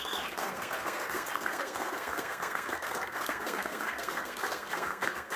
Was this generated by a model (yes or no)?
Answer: yes